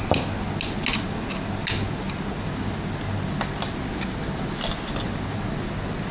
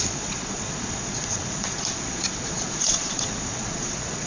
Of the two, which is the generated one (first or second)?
second